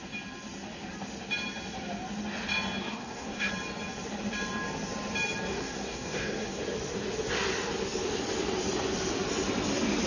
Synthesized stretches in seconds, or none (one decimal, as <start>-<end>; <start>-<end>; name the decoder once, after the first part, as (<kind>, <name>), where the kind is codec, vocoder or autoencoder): 2.8-3.5 (codec, SNAC); 5.5-6.6